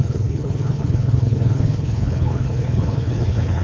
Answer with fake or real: fake